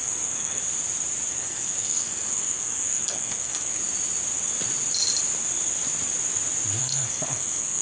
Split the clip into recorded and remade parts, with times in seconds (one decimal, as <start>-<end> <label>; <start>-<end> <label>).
0.0-0.6 remade; 0.6-1.3 recorded; 1.3-3.8 remade; 3.8-6.8 recorded; 6.8-7.8 remade